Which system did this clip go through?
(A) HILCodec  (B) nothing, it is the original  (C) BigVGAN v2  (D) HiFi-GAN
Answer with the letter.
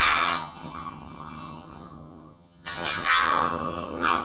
D